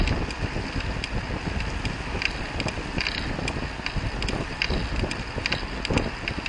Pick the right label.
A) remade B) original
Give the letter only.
B